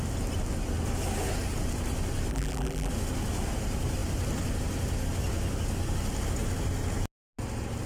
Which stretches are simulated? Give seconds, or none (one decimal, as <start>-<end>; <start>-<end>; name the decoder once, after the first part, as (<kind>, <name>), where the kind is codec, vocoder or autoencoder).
2.3-2.9 (vocoder, BigVGAN v2)